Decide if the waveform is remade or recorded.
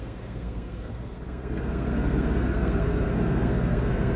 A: remade